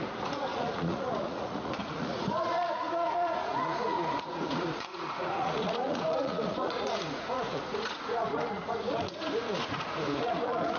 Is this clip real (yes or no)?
no